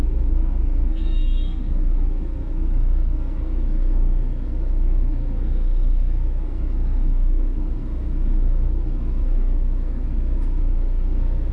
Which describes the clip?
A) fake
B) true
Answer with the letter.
A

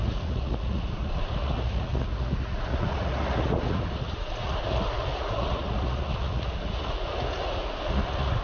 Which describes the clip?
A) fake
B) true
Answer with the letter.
A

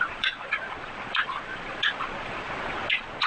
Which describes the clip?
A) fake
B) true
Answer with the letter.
A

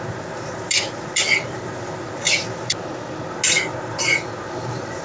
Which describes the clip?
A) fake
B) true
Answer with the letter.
B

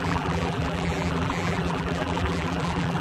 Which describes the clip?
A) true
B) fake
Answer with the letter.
B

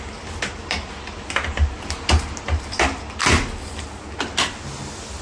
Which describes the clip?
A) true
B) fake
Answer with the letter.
A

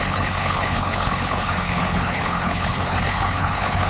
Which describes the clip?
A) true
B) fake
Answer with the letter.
B